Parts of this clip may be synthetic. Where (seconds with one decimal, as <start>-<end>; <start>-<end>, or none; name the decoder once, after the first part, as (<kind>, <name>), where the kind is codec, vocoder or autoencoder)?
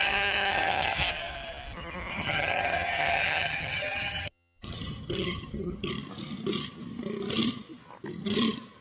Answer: 0.0-1.0 (vocoder, HiFi-GAN); 2.1-5.9